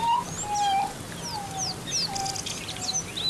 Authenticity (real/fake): real